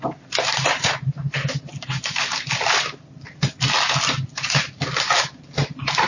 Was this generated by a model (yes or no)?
no